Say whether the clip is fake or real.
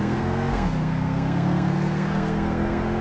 fake